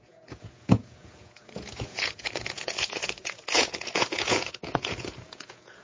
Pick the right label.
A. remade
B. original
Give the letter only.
A